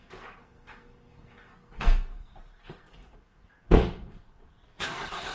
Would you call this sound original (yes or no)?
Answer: no